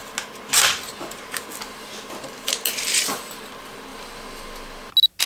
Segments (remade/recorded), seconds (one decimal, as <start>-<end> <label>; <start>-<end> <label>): 0.0-5.3 recorded